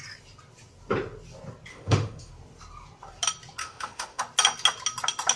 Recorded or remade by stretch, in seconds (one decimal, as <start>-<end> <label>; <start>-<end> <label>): 0.0-1.7 recorded; 1.7-2.3 remade; 2.3-3.6 recorded; 3.6-4.2 remade; 4.2-5.4 recorded